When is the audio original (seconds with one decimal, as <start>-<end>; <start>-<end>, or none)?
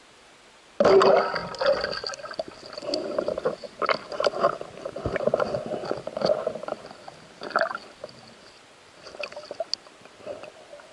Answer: 0.0-10.9